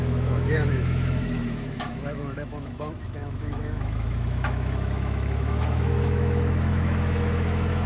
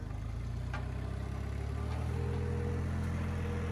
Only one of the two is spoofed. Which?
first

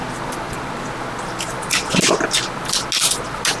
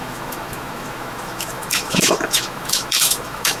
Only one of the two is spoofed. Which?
second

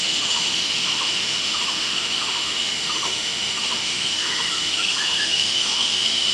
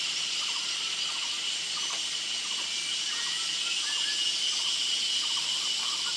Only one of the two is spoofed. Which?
first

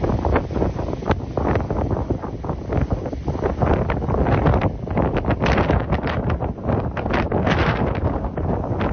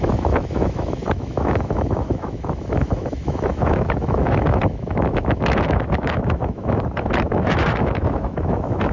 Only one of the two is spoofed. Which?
second